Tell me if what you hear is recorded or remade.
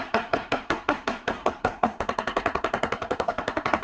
remade